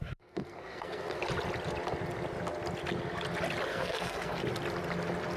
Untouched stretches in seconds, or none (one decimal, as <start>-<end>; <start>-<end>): 1.2-3.7; 4.4-5.4